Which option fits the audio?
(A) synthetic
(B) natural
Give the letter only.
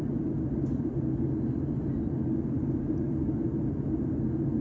B